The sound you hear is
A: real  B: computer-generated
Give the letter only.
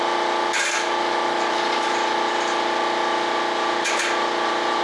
A